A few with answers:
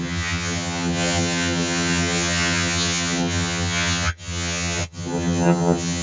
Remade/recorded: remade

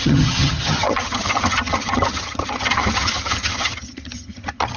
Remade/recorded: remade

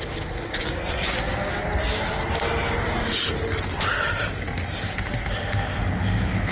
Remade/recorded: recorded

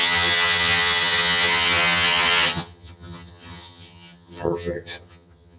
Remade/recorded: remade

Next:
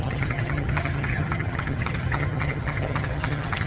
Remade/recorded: remade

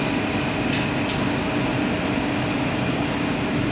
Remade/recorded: recorded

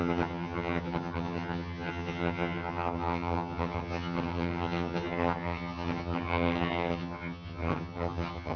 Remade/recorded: remade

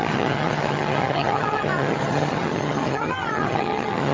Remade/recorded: remade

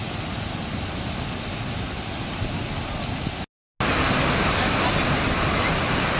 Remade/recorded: recorded